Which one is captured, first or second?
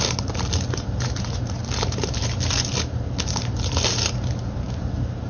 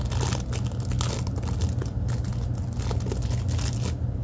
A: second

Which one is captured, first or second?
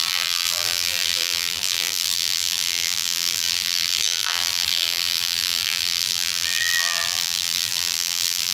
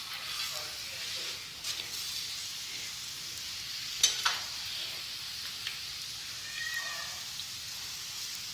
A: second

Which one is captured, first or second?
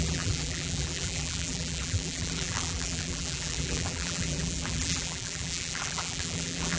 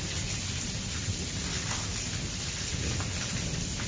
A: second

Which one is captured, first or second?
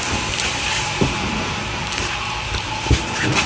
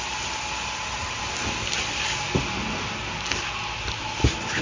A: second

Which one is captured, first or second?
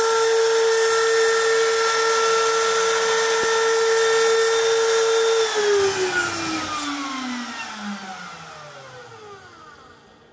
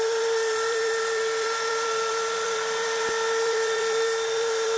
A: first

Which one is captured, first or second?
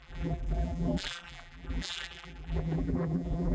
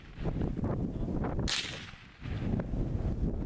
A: second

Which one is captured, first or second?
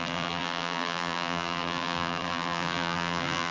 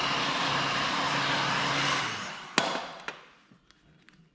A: second